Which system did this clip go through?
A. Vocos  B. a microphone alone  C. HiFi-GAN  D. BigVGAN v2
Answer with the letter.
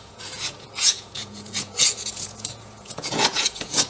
A